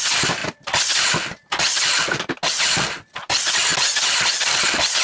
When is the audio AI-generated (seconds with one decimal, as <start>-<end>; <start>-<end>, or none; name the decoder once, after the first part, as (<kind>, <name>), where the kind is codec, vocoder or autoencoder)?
none